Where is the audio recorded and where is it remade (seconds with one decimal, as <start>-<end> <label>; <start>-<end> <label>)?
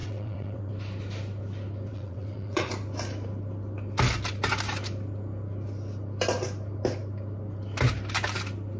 0.0-0.7 remade; 0.7-1.9 recorded; 1.9-2.7 remade; 2.7-8.8 recorded